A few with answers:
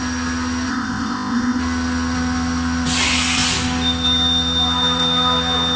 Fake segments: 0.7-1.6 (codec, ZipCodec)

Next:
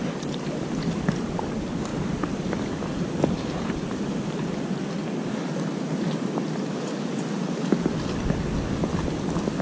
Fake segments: 1.9-4.4 (vocoder, BigVGAN v2); 5.0-6.8

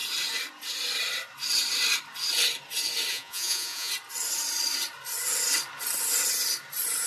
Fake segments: 3.1-3.9 (vocoder, Vocos)

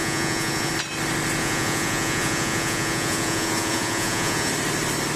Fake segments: 0.0-0.7 (vocoder, Vocos); 1.4-4.5

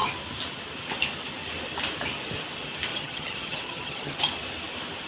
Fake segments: 2.9-4.2 (vocoder, HiFi-GAN)

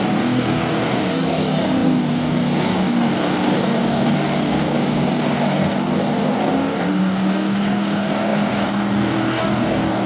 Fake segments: 0.0-10.1 (codec, DAC)

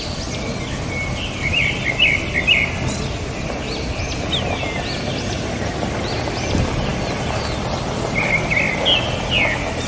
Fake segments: none

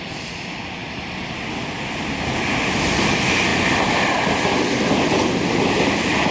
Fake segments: none